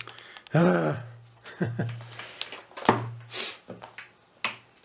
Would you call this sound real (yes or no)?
yes